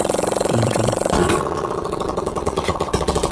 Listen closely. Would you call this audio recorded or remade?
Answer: remade